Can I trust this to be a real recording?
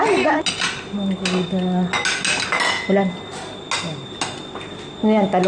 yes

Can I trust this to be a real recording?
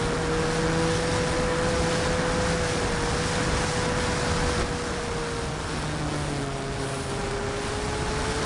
yes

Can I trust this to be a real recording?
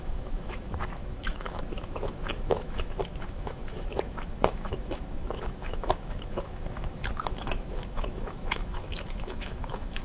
no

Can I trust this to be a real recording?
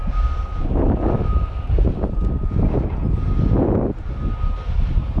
yes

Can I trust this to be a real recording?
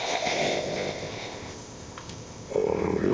no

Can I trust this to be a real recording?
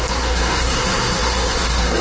no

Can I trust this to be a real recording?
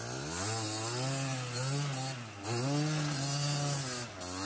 yes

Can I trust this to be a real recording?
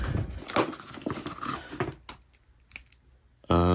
yes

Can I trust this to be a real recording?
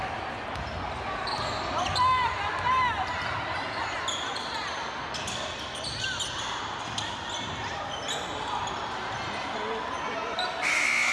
yes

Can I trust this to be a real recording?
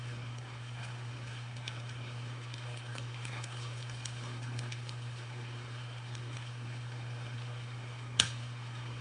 no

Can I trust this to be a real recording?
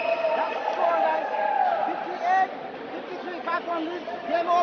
yes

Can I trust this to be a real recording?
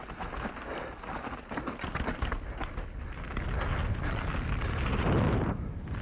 yes